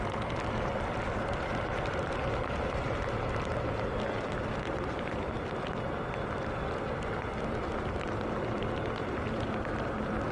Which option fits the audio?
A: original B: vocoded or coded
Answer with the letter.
B